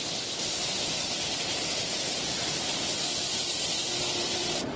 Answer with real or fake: real